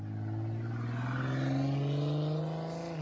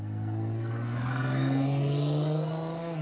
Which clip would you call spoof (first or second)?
second